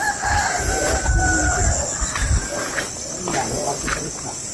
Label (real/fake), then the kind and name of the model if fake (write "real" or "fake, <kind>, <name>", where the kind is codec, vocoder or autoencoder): real